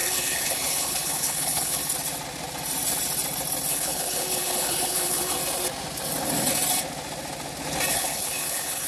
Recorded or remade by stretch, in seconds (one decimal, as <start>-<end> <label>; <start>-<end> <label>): 0.0-1.8 remade; 1.8-3.7 recorded; 3.7-5.4 remade; 5.4-7.9 recorded; 7.9-8.9 remade